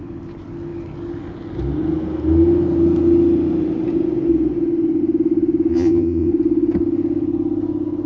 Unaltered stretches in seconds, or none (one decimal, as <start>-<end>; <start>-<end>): 0.0-5.7; 6.3-8.1